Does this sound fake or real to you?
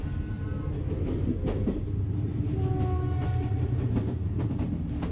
real